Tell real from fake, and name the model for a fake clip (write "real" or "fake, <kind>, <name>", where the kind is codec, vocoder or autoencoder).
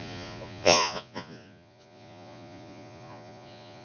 fake, vocoder, Vocos